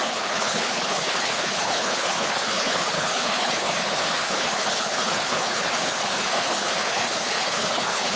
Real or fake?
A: fake